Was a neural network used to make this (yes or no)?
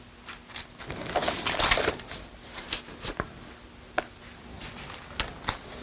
no